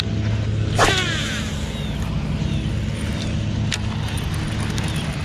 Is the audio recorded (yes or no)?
yes